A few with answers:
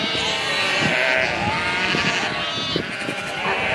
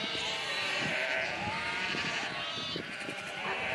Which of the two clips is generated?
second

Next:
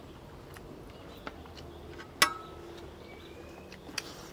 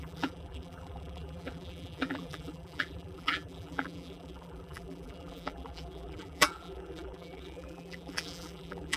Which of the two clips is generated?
second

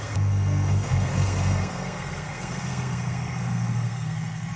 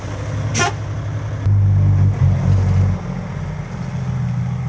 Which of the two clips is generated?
first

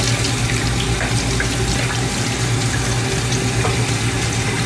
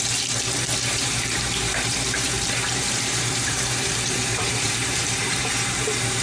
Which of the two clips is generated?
second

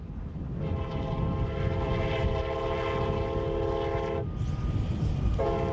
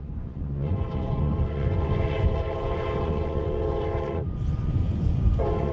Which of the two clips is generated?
second